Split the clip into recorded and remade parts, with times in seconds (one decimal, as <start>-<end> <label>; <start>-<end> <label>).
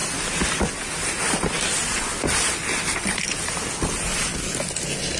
0.0-5.2 recorded